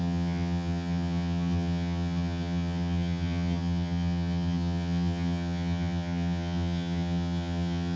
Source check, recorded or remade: remade